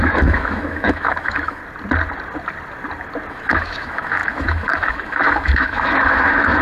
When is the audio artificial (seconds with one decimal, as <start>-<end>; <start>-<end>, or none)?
0.0-1.6; 3.3-6.6

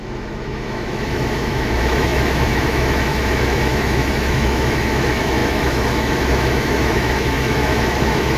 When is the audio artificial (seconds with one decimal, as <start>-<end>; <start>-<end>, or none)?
0.0-8.4

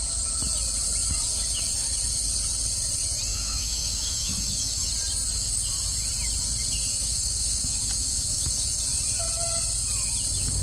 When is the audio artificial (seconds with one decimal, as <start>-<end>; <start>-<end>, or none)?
3.3-4.9; 6.9-8.8

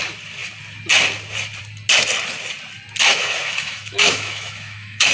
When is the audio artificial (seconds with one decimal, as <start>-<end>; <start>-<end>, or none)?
3.1-5.1